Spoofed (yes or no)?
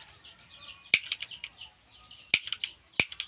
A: no